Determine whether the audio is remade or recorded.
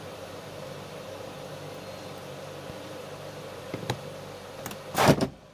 remade